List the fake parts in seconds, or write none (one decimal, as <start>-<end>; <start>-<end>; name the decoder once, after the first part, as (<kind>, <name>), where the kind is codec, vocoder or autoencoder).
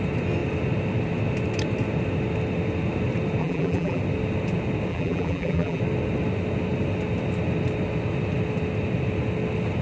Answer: 3.4-4.0 (vocoder, BigVGAN v2); 4.9-5.8